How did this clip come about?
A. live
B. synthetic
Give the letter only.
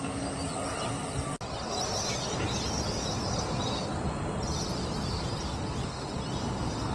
A